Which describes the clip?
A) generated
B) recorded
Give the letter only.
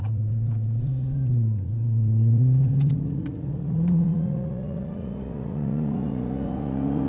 A